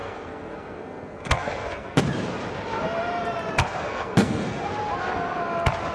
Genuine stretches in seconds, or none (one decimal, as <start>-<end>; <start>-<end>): 2.0-3.6; 4.7-5.9